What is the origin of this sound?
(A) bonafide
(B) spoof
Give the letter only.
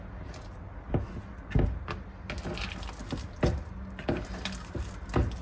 A